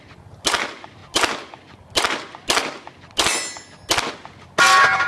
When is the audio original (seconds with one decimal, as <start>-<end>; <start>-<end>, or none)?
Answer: 0.0-5.1